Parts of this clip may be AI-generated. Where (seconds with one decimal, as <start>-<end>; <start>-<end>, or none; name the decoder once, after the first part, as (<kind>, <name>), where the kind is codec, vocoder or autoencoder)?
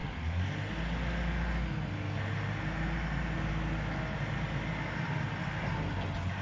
none